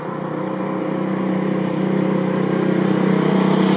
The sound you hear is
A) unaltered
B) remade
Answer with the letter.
A